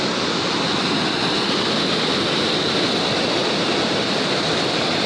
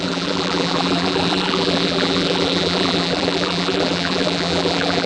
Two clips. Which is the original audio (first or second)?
first